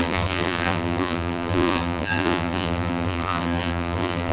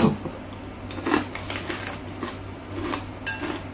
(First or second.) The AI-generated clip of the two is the first